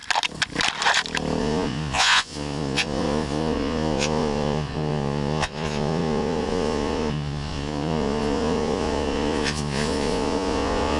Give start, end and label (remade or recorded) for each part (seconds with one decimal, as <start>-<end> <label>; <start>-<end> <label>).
0.0-1.4 recorded; 1.4-11.0 remade